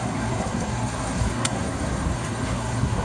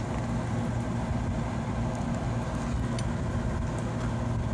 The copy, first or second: first